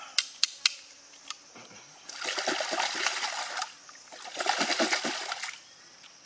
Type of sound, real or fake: real